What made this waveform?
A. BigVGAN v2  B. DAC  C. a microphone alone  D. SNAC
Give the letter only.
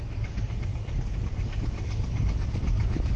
B